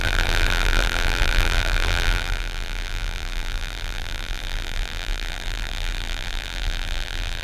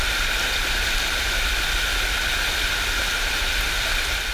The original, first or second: second